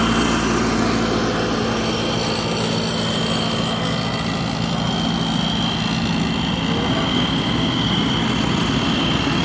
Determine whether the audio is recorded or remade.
recorded